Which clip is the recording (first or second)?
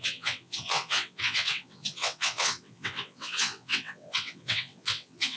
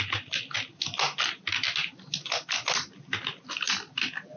second